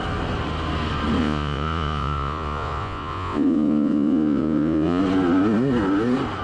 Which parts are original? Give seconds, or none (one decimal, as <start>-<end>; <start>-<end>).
0.0-1.2; 5.0-6.4